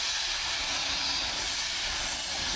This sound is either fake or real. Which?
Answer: real